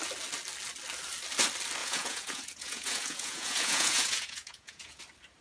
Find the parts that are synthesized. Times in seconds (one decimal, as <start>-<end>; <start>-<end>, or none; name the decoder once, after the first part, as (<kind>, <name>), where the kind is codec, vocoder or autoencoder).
1.8-5.0 (vocoder, Vocos)

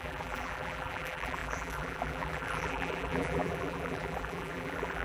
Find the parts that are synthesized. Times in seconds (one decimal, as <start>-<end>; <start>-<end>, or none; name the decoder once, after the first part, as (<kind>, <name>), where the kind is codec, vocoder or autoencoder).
0.0-5.0 (vocoder, BigVGAN v2)

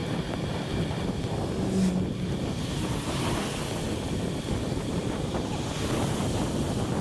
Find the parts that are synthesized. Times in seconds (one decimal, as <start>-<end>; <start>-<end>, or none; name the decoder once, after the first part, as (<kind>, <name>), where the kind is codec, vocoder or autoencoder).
none

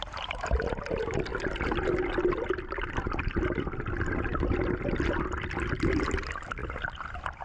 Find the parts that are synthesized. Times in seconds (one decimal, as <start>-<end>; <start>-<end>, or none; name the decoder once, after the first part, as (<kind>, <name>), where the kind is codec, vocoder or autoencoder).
none

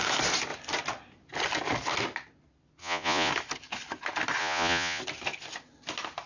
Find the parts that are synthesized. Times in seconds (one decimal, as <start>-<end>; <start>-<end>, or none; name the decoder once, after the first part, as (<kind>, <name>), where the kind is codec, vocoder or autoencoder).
2.8-3.3 (vocoder, Vocos); 4.4-5.0

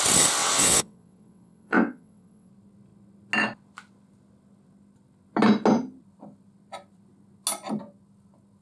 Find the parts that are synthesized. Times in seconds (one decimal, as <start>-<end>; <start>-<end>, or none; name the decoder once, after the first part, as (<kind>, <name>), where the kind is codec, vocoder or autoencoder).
0.4-2.5 (vocoder, WaveNeXt)